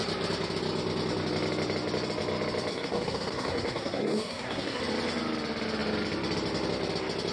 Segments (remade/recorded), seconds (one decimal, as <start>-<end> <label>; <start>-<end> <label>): 0.0-2.7 recorded; 2.7-4.8 remade; 4.8-7.3 recorded